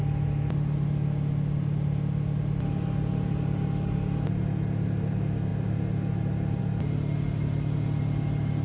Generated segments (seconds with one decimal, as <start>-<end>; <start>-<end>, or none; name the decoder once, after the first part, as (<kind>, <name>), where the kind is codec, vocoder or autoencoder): none